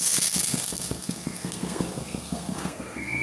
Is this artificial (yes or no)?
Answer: yes